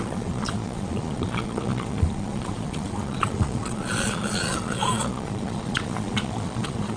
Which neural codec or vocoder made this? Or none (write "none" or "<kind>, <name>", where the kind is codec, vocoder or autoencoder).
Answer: vocoder, Vocos